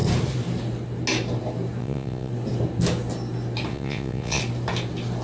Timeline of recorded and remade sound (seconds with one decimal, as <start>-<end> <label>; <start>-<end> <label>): 0.0-1.8 recorded; 1.8-2.3 remade; 2.3-3.7 recorded; 3.7-4.4 remade; 4.4-5.2 recorded